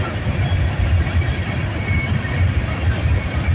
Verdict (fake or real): real